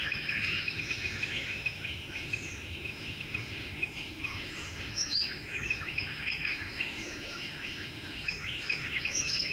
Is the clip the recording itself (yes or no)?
no